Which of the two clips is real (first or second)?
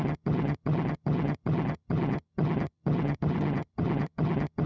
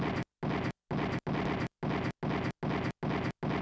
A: second